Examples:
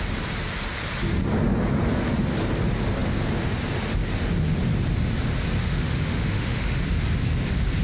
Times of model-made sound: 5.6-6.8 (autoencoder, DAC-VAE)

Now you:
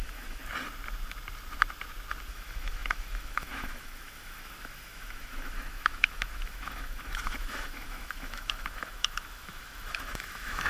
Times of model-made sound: 0.0-0.4 (autoencoder, DAC-VAE); 2.3-10.7

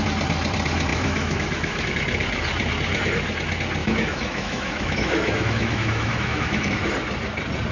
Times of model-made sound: 0.9-1.8 (autoencoder, DAC-VAE); 3.8-6.9

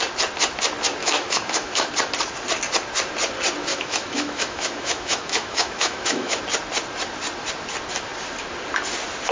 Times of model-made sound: 1.0-1.9 (autoencoder, DAC-VAE); 3.7-6.4

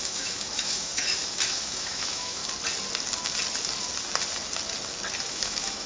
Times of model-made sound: 0.0-2.4 (autoencoder, DAC-VAE); 5.2-5.9